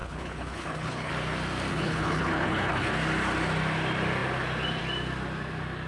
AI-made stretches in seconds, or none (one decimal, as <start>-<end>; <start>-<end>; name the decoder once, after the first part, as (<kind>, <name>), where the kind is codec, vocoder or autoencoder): 0.0-1.1 (codec, HILCodec); 1.7-2.9